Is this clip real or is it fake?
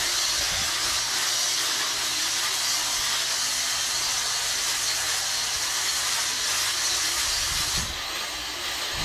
real